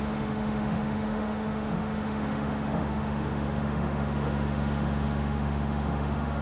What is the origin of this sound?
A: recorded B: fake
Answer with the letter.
B